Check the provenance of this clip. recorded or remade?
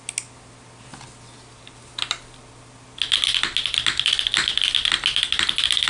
recorded